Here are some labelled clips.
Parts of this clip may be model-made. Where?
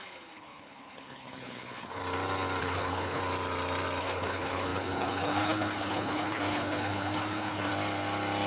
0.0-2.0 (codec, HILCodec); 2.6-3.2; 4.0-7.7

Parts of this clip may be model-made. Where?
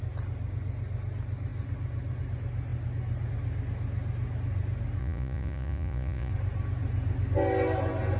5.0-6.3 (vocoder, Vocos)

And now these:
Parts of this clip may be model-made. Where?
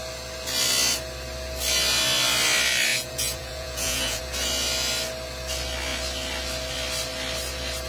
2.9-4.2 (vocoder, Vocos)